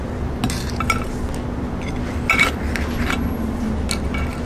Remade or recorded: recorded